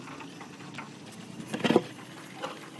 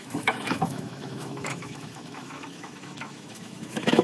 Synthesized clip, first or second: second